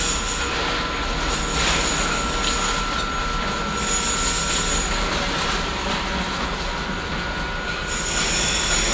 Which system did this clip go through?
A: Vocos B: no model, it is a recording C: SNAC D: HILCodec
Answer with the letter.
B